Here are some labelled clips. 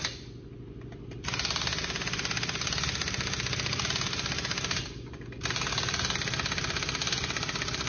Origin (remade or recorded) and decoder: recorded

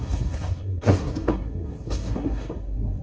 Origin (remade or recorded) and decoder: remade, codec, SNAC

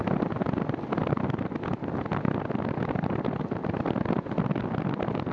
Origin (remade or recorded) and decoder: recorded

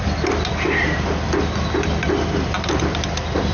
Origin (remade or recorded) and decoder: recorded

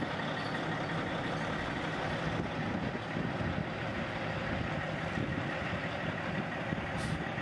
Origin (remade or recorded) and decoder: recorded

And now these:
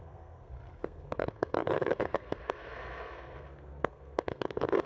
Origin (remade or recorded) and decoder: remade, codec, SNAC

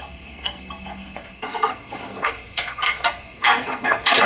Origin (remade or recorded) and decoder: remade, codec, SNAC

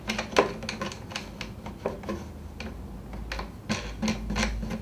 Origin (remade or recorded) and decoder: recorded